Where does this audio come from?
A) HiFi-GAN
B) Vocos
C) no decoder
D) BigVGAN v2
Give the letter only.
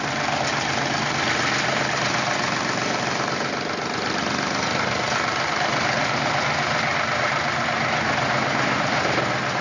C